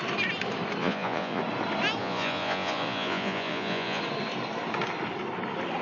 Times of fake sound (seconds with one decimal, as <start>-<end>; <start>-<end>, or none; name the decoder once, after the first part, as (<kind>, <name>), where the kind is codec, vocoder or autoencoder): 0.8-1.4 (vocoder, Vocos); 2.0-4.0